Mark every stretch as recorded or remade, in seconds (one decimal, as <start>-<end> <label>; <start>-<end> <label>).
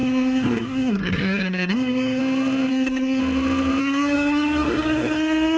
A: 0.0-2.2 remade; 2.2-2.7 recorded; 2.7-3.2 remade; 3.2-3.8 recorded; 3.8-5.6 remade